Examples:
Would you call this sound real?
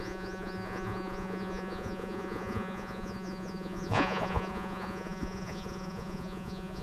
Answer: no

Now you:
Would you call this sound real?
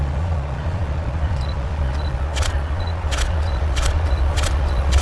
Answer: no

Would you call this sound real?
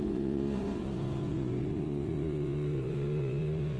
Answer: no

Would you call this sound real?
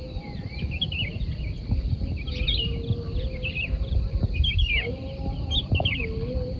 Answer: yes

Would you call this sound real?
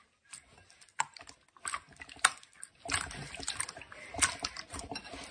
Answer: yes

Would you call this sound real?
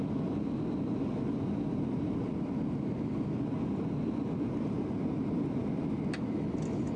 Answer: yes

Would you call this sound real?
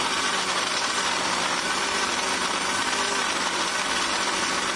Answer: yes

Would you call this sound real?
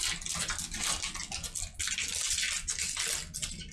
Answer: yes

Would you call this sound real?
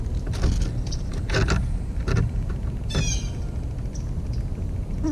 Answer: yes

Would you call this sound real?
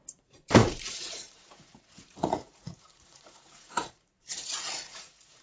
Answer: no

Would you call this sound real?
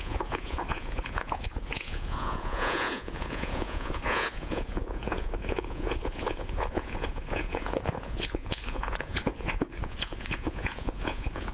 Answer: no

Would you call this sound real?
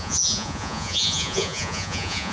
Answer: no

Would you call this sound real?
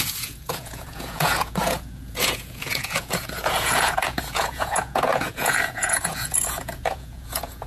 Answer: no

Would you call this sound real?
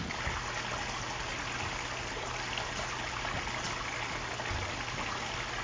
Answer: yes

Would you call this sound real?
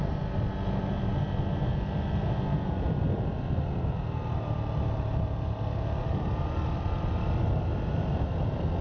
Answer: yes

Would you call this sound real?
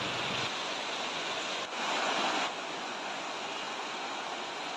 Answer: no